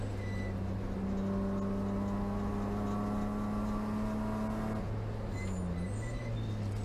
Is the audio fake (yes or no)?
no